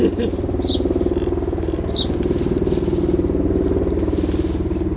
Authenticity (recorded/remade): recorded